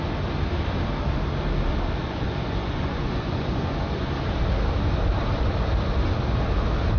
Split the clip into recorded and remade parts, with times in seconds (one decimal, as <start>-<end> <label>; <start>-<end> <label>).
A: 0.0-2.0 recorded; 2.0-4.1 remade; 4.1-7.0 recorded